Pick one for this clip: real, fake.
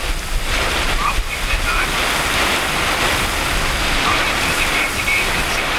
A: real